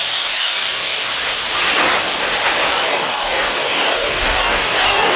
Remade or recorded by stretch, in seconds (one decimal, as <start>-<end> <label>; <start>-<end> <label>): 0.0-1.1 remade; 1.1-2.7 recorded; 2.7-5.2 remade